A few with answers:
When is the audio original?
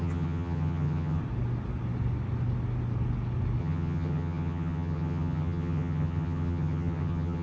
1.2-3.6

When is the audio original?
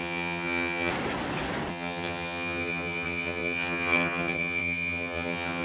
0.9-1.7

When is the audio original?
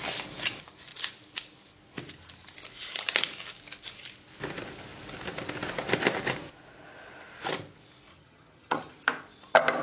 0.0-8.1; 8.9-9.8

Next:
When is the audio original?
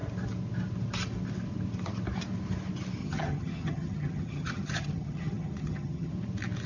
0.0-3.0; 6.1-6.7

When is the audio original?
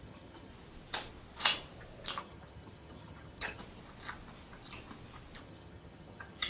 0.5-2.2; 3.6-5.4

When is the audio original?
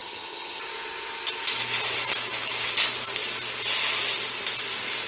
0.6-5.1